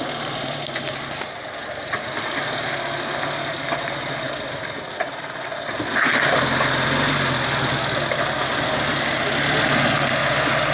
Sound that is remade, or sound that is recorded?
recorded